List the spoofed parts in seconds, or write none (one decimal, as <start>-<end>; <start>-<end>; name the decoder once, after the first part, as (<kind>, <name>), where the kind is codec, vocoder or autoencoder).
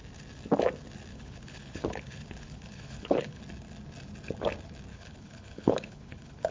1.1-3.4 (codec, HILCodec); 4.9-6.5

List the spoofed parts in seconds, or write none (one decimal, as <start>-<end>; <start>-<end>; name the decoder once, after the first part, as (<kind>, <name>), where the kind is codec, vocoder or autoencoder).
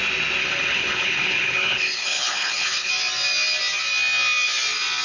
0.4-2.9 (codec, HILCodec)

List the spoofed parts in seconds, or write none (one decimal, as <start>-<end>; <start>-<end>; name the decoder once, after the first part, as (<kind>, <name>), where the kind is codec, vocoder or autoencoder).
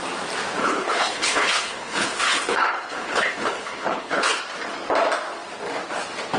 0.6-4.4 (codec, HILCodec)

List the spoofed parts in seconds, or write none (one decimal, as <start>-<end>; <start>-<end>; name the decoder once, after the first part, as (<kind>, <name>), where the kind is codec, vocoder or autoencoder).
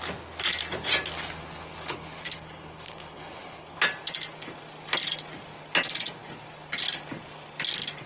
1.4-3.8 (codec, HILCodec)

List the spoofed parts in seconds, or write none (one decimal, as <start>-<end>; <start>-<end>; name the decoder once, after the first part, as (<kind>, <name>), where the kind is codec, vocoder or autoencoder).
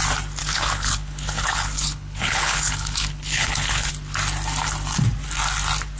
0.4-3.9 (codec, HILCodec)